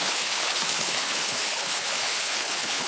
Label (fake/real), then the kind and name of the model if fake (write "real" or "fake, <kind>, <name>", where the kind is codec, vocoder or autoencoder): fake, codec, HILCodec